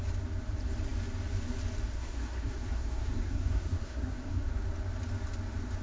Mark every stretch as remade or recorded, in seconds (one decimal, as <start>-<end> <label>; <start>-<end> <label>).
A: 0.0-1.9 recorded; 1.9-4.5 remade; 4.5-5.8 recorded